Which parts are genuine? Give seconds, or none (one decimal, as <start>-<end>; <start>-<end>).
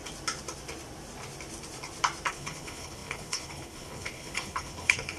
0.0-2.3